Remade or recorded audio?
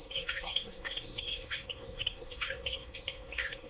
remade